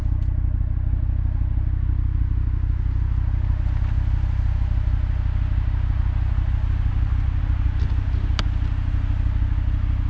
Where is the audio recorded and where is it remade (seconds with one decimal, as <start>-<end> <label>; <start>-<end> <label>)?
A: 0.0-10.1 recorded